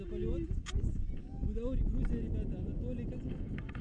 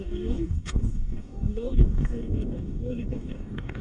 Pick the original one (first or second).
first